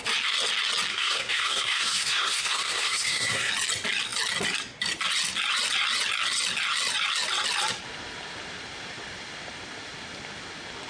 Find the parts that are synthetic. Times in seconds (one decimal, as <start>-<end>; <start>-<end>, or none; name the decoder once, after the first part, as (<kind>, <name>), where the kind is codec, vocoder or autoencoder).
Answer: 0.9-3.5 (codec, SNAC)

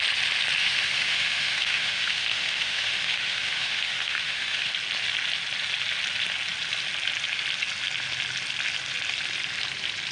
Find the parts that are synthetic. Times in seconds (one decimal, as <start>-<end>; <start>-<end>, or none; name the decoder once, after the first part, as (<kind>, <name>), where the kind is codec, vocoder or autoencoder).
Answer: 0.6-4.7 (autoencoder, DAC-VAE)

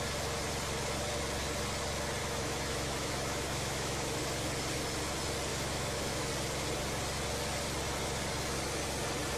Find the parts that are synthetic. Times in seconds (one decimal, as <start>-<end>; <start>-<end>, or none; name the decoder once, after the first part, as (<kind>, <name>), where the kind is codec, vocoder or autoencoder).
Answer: 2.2-4.2 (autoencoder, DAC-VAE); 5.5-6.3